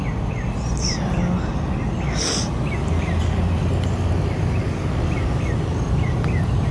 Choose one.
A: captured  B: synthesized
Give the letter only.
A